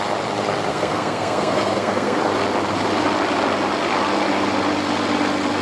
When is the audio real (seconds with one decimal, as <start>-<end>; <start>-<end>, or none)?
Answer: 0.0-0.7; 2.2-5.6